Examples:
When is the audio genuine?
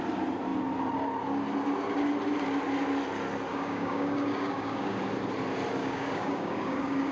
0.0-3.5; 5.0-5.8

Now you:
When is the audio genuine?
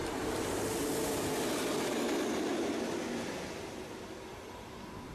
0.0-5.1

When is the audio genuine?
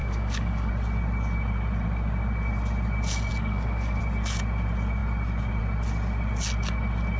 0.7-3.3; 4.0-7.2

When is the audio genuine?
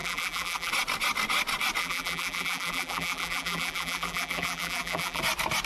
0.7-1.8; 5.2-5.7